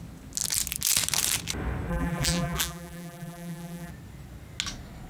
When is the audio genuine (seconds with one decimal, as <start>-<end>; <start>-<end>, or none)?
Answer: 0.0-1.9; 3.9-5.1